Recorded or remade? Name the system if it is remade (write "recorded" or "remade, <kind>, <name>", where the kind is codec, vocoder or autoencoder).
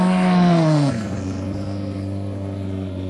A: remade, codec, SNAC